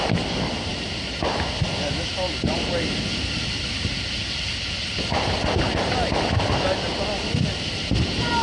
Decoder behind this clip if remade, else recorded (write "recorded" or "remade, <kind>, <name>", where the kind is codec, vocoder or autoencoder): recorded